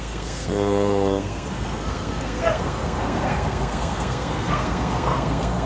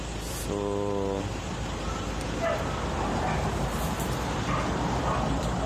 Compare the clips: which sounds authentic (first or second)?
second